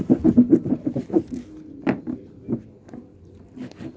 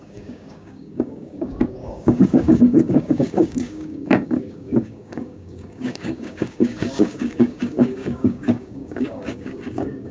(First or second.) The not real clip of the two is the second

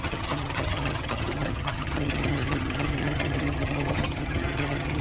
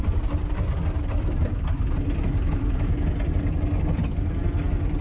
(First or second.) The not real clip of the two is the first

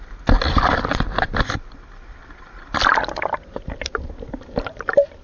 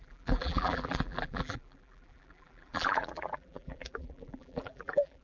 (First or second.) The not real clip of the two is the second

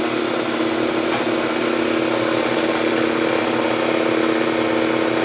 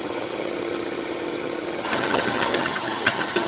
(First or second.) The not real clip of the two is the second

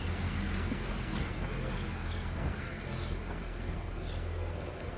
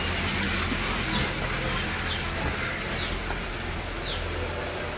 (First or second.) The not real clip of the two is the first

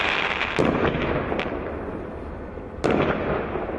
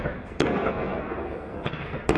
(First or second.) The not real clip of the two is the second